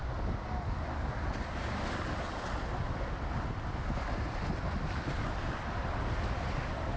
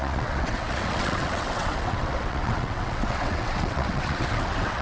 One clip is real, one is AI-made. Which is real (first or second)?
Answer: first